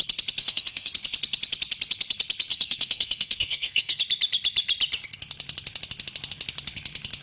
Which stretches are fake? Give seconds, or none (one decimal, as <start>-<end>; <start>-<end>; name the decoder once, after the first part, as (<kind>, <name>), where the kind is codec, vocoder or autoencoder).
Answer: 0.4-0.9 (codec, SNAC); 2.5-4.0